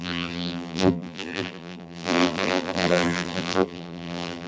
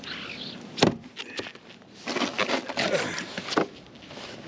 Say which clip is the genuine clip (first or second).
second